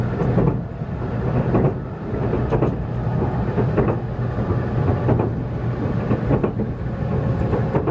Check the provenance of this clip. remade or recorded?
recorded